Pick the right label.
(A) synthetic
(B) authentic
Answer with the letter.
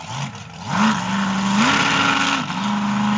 B